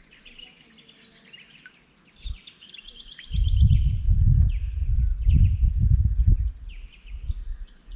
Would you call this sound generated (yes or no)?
no